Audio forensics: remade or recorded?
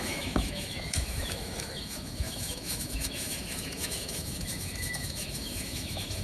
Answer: remade